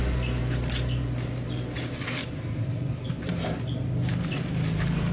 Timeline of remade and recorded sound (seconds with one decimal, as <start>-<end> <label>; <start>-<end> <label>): 0.0-0.4 recorded; 0.4-1.0 remade; 1.0-2.2 recorded; 2.2-4.4 remade; 4.4-5.1 recorded